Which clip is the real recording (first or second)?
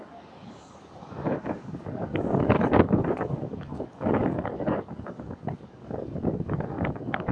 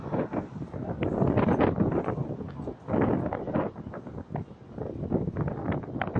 second